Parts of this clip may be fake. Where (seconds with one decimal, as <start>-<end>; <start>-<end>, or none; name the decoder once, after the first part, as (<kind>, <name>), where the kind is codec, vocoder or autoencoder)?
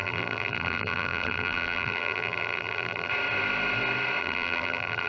0.0-3.1 (vocoder, BigVGAN v2); 4.2-5.1